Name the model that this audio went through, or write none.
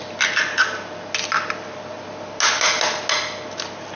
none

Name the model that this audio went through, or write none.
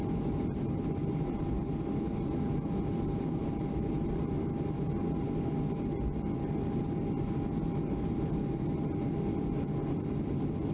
none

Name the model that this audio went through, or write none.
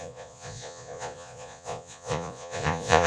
vocoder, Vocos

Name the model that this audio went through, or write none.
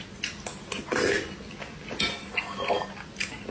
none